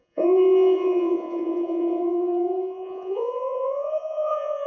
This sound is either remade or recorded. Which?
remade